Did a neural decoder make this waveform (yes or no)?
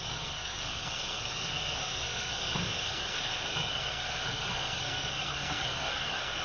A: yes